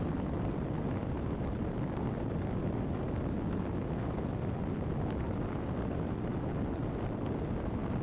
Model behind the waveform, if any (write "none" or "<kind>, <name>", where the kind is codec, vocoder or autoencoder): none